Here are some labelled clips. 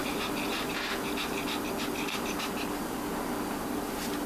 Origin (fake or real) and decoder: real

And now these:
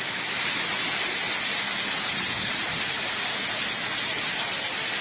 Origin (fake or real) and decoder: real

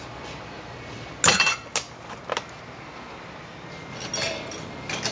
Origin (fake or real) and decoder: real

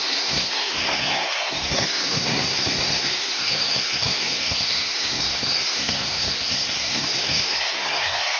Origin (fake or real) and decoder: fake, codec, SNAC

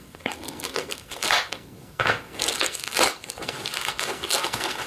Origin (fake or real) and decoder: fake, codec, SNAC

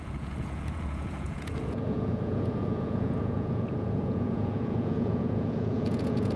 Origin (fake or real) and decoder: fake, vocoder, Vocos